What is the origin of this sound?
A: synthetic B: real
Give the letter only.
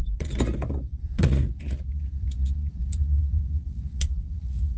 A